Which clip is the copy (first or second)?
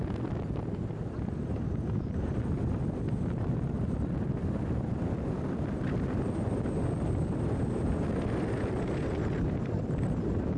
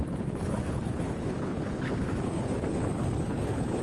second